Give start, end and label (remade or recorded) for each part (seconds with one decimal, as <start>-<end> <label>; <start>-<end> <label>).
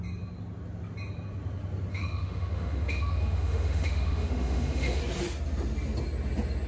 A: 0.0-1.9 recorded; 1.9-5.0 remade; 5.0-6.7 recorded